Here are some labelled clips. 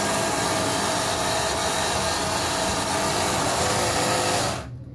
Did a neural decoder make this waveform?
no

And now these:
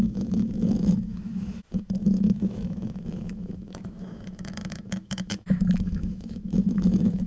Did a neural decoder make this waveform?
yes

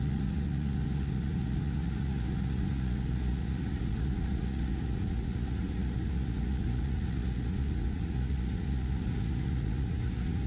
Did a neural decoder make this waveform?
yes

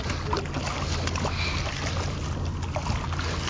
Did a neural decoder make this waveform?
no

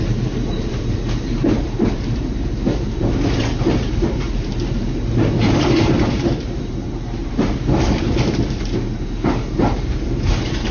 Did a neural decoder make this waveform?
yes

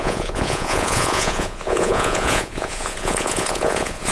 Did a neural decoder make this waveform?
yes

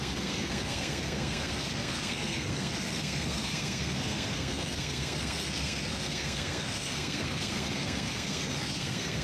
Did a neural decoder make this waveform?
yes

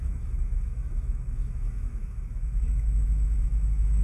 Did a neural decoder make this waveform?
yes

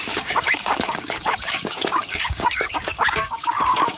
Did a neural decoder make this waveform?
yes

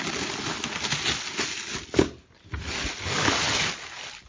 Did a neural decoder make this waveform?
no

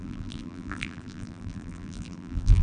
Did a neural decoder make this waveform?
yes